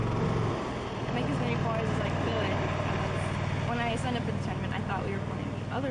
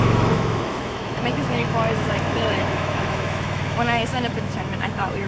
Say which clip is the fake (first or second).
second